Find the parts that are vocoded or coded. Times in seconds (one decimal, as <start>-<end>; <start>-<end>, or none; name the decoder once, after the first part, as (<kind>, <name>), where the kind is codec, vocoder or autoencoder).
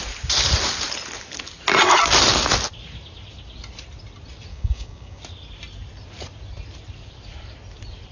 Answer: 4.5-5.2 (codec, DAC)